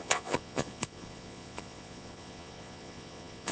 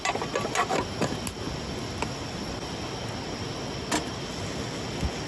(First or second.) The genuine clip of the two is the second